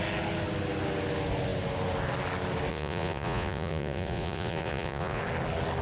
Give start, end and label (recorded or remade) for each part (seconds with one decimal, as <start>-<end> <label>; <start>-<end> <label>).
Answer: 0.0-2.7 recorded; 2.7-5.2 remade; 5.2-5.8 recorded